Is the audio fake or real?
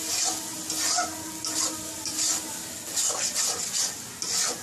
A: real